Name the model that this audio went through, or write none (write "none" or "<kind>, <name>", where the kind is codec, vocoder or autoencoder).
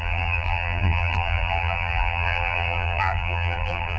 vocoder, BigVGAN v2